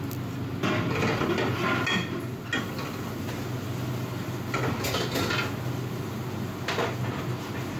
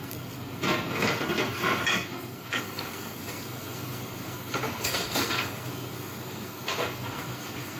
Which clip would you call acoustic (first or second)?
first